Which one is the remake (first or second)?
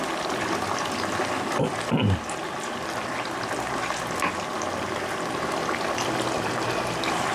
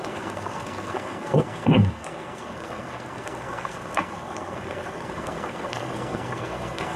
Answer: second